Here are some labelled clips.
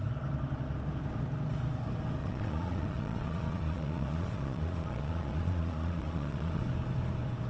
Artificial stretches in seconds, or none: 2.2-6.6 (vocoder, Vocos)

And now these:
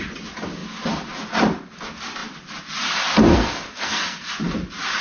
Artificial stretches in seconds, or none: 3.3-4.3 (codec, SNAC)

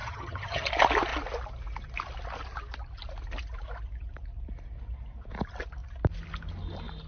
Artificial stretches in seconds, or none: 0.0-0.7 (vocoder, HiFi-GAN)

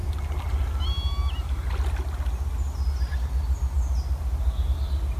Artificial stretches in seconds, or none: none

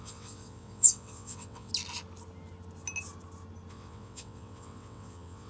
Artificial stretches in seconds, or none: 0.0-1.7 (vocoder, WaveNeXt); 3.7-5.5

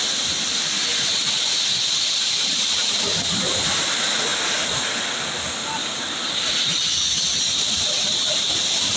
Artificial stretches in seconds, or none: none